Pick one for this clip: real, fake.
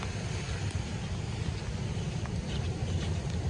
fake